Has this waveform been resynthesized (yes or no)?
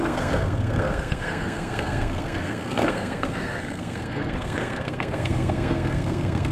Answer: yes